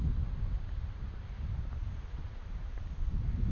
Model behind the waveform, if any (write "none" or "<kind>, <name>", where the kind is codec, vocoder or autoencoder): none